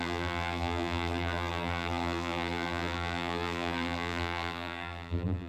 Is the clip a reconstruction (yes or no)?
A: yes